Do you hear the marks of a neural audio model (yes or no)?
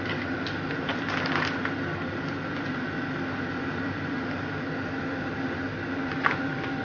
no